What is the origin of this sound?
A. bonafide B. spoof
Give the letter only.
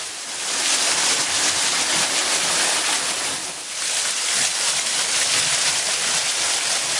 A